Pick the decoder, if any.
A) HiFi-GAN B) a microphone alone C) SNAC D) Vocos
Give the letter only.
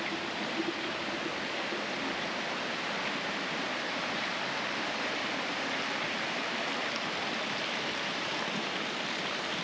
B